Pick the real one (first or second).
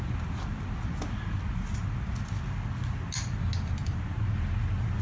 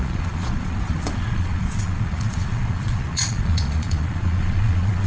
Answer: first